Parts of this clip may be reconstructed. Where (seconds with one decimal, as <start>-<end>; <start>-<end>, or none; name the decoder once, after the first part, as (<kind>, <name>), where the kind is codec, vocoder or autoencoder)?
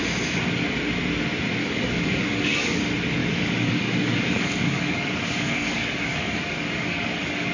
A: 1.6-2.8 (codec, DAC); 3.2-7.5